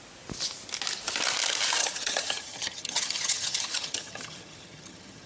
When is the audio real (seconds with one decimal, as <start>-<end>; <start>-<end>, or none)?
0.0-1.8